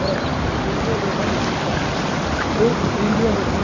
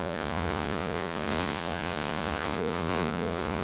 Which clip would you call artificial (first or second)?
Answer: second